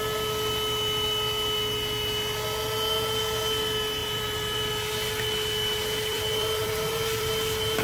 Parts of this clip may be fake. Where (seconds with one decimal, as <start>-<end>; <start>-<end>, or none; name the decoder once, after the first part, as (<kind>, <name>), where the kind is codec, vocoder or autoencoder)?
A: 4.0-4.7 (vocoder, BigVGAN v2); 6.1-7.3